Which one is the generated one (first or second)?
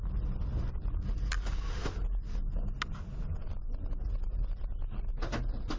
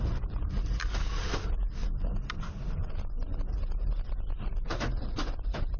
second